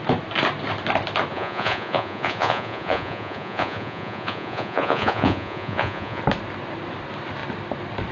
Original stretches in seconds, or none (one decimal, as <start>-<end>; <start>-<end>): 0.0-1.3; 6.2-8.1